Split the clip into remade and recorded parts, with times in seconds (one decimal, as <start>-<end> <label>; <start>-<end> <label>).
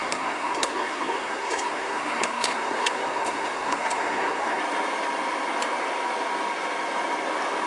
0.0-4.6 remade; 4.6-7.7 recorded